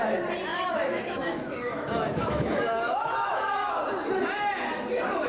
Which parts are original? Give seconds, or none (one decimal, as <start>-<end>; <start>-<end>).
0.0-0.5; 3.7-5.3

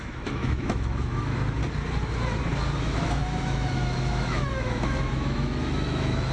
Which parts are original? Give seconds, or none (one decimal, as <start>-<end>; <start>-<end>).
1.6-2.8